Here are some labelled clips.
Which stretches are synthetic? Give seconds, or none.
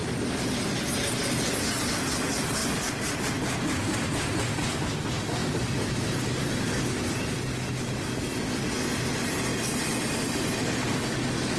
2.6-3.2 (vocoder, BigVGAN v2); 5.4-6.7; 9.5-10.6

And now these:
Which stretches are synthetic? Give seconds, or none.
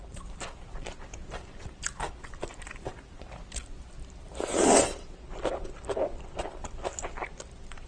0.0-1.1 (vocoder, BigVGAN v2); 2.4-3.6; 6.5-7.0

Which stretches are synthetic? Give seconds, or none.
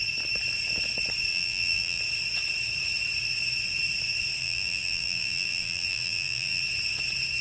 1.3-2.0 (vocoder, BigVGAN v2); 4.4-6.6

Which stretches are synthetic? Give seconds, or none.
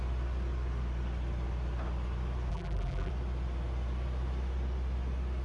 2.5-3.1 (vocoder, BigVGAN v2)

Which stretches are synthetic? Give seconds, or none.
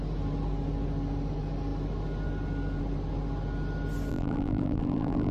4.1-5.3 (vocoder, BigVGAN v2)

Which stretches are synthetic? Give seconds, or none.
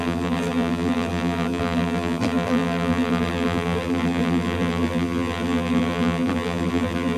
0.0-7.2 (vocoder, BigVGAN v2)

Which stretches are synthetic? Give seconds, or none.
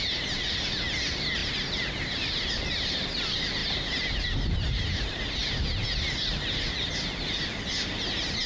1.4-2.5 (vocoder, BigVGAN v2); 3.6-4.2